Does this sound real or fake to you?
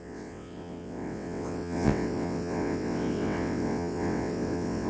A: fake